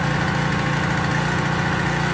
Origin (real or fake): real